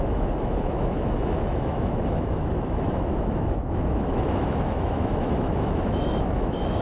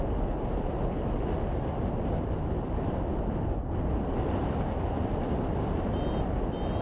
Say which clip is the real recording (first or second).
second